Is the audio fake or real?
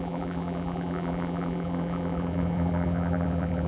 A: fake